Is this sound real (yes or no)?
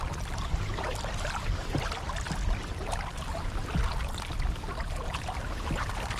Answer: yes